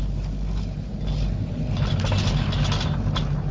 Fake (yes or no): no